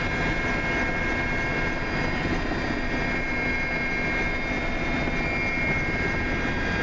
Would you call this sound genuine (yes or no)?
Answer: yes